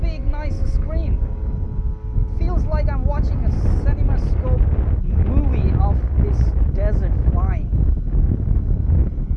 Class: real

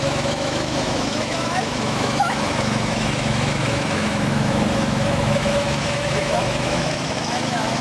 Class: fake